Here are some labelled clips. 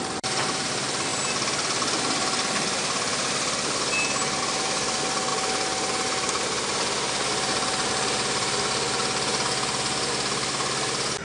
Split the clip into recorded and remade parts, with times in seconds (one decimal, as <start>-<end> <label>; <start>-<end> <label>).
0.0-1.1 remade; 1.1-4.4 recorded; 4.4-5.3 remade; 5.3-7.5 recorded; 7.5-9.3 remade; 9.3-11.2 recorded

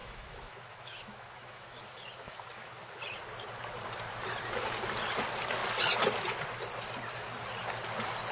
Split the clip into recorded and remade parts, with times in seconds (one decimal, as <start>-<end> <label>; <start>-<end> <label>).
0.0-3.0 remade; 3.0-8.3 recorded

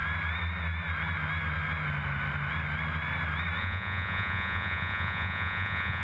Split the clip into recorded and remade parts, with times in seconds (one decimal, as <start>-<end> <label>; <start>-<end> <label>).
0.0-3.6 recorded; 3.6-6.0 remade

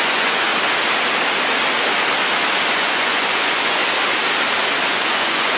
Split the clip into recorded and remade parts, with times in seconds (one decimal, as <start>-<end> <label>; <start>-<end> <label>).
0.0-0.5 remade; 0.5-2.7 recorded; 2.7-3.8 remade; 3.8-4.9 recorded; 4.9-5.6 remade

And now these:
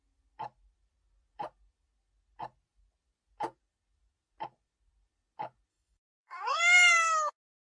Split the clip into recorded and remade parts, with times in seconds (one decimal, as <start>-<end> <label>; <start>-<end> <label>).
0.0-5.7 recorded; 5.7-7.3 remade; 7.3-7.7 recorded

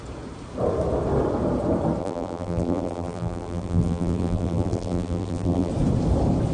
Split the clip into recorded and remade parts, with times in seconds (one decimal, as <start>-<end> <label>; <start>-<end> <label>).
0.0-2.0 recorded; 2.0-5.7 remade; 5.7-6.5 recorded